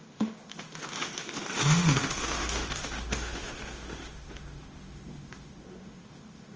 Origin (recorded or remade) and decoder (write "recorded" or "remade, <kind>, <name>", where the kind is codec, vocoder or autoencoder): remade, autoencoder, DAC-VAE